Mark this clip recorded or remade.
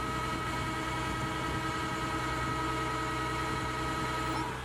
recorded